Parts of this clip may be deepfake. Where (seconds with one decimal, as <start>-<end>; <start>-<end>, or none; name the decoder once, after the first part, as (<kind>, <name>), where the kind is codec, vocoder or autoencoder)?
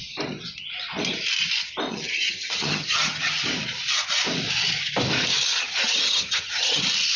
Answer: 1.9-3.4 (vocoder, HiFi-GAN); 5.5-6.8